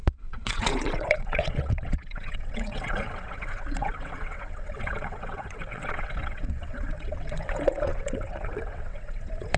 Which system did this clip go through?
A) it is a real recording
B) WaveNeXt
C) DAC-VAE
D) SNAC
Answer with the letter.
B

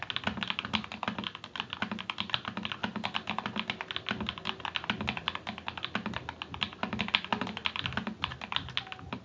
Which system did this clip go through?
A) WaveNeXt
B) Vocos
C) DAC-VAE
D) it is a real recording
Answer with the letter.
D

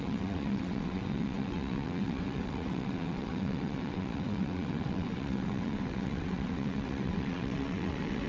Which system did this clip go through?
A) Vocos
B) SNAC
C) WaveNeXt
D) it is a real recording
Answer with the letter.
C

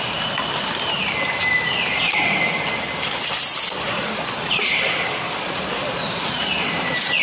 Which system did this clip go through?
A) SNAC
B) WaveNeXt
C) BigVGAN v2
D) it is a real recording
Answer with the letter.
D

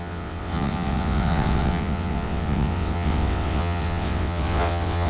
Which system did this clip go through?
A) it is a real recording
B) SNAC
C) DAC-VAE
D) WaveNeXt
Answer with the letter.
D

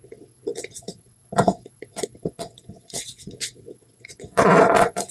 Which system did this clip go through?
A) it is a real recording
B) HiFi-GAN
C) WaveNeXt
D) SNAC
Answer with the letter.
C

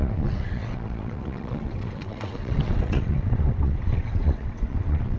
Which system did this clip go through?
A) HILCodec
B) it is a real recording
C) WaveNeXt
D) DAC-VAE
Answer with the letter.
C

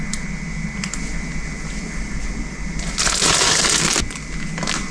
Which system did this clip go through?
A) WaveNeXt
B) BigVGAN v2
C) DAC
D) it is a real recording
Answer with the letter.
D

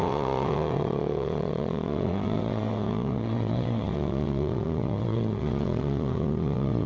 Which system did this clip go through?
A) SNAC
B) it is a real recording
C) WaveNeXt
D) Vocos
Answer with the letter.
C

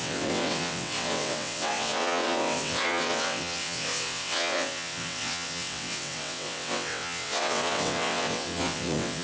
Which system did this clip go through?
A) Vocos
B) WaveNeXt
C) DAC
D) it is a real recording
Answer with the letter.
B